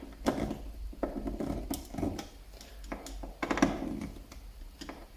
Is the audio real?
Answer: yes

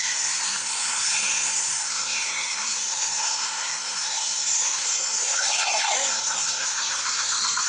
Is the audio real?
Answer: no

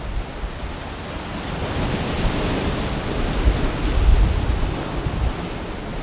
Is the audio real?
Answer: yes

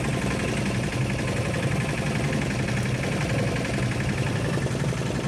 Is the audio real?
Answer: yes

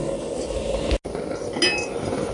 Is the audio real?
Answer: yes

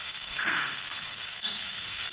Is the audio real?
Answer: no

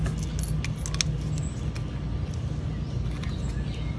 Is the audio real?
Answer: yes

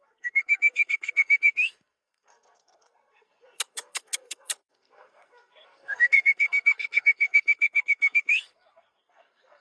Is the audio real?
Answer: no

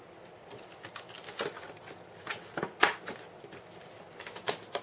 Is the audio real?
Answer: yes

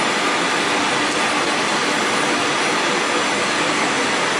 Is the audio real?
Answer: yes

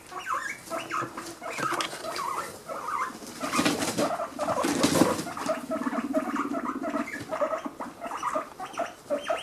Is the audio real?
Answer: yes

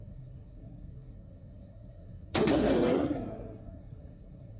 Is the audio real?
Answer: no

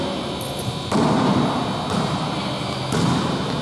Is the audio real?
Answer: yes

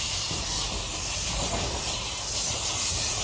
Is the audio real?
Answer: yes